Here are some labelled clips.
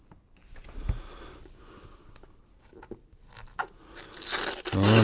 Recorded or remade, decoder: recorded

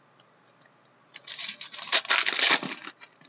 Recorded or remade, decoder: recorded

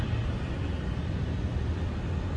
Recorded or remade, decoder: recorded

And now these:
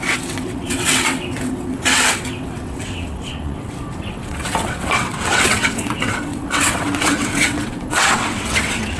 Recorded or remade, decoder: remade, vocoder, WaveNeXt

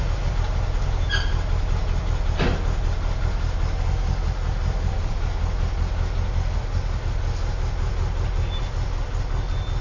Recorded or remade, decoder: recorded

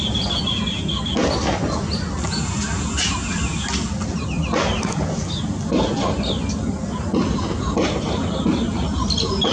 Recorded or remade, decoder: recorded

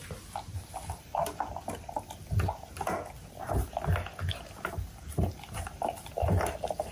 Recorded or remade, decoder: recorded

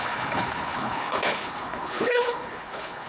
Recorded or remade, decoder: remade, codec, HILCodec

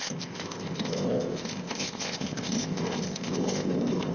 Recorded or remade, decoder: remade, codec, ZipCodec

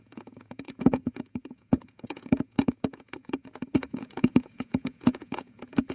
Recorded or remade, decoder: remade, vocoder, Vocos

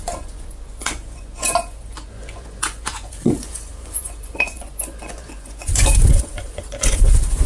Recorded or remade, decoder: remade, vocoder, Vocos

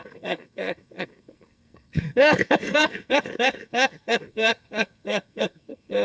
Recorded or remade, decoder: remade, codec, SNAC